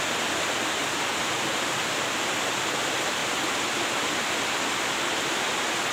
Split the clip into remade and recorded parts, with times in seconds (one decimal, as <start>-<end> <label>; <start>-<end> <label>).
0.0-3.2 recorded; 3.2-4.9 remade; 4.9-5.9 recorded